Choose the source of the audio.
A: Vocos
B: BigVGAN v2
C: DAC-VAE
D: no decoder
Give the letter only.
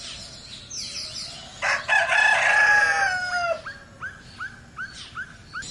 D